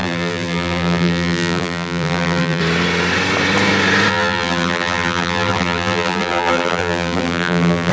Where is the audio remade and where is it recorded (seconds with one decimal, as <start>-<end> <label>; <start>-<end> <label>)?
0.0-2.6 remade; 2.6-4.1 recorded; 4.1-7.9 remade